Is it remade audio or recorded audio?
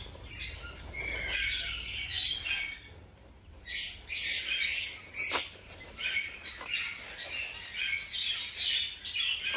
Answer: recorded